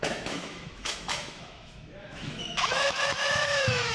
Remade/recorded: remade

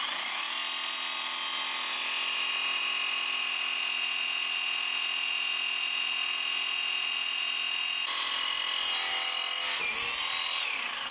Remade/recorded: recorded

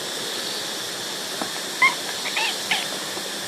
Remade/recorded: recorded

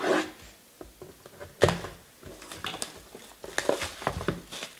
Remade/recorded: recorded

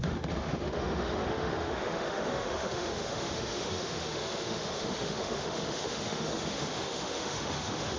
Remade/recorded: remade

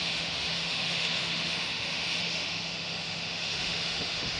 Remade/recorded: remade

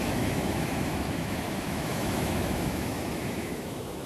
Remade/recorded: remade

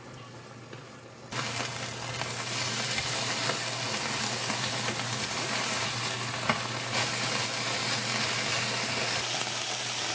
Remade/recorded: recorded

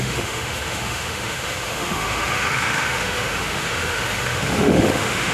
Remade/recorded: remade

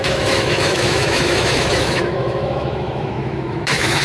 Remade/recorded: remade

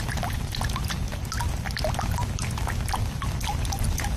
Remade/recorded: recorded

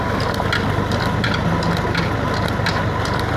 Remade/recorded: recorded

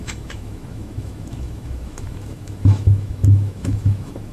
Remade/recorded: remade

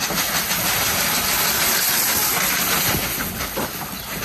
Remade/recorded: recorded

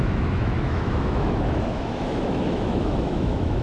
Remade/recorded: remade